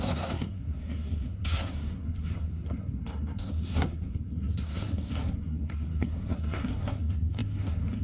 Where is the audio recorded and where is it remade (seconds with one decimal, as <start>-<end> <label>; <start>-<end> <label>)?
0.0-8.0 remade